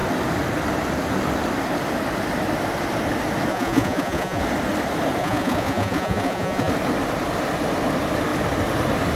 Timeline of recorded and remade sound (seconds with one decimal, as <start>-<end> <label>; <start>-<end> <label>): 0.0-3.5 recorded; 3.5-4.4 remade; 4.4-5.2 recorded; 5.2-6.7 remade; 6.7-9.2 recorded